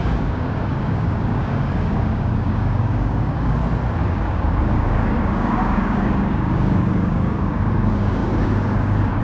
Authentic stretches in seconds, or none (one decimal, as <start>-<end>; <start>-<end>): 3.6-4.1

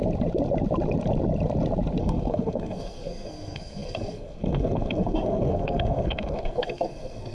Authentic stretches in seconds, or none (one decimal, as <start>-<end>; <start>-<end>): 0.0-2.0

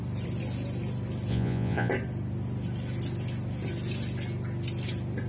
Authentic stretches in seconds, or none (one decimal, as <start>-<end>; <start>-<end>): 0.0-1.3; 1.9-5.3

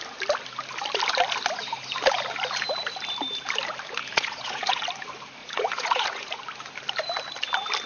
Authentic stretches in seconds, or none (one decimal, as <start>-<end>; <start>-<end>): 0.0-4.1; 4.8-5.4; 6.4-7.9